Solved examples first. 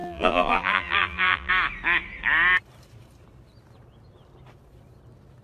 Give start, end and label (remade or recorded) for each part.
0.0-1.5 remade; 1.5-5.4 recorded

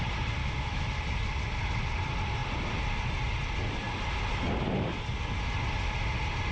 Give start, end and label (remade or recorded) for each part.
0.0-0.4 recorded; 0.4-0.9 remade; 0.9-6.5 recorded

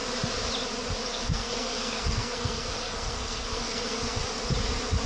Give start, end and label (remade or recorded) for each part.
0.0-1.1 recorded; 1.1-4.2 remade; 4.2-5.1 recorded

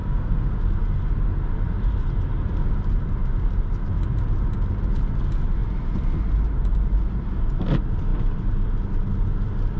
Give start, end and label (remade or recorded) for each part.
0.0-0.5 remade; 0.5-9.8 recorded